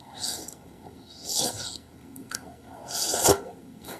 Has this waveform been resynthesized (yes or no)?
yes